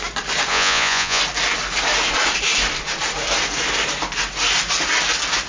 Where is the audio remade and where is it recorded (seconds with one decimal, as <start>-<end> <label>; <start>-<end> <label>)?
0.0-0.5 recorded; 0.5-1.2 remade; 1.2-5.5 recorded